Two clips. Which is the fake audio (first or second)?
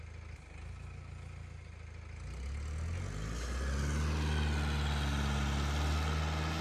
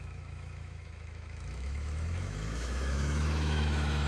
second